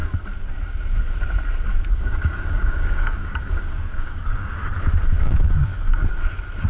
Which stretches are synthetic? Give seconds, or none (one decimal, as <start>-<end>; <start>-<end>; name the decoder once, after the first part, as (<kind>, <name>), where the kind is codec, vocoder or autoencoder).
1.9-4.6 (codec, DAC); 5.2-5.7